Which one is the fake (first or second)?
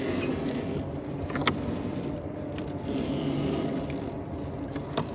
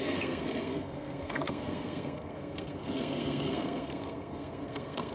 second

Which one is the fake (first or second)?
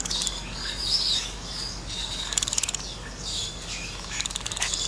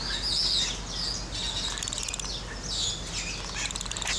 first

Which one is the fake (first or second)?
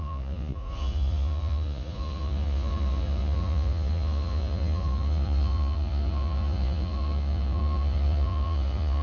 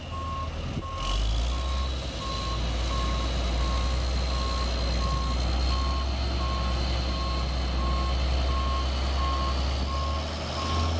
first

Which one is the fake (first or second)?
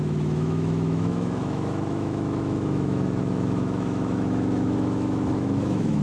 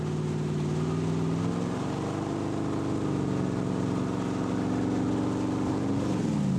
first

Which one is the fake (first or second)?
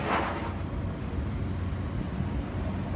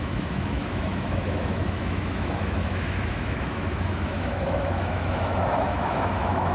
second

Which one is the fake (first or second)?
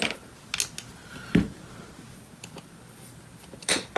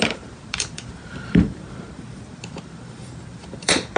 second